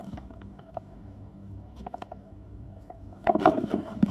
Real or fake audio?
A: fake